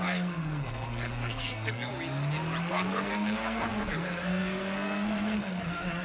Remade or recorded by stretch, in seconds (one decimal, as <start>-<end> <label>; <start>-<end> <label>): 0.0-1.9 remade; 1.9-2.6 recorded; 2.6-6.0 remade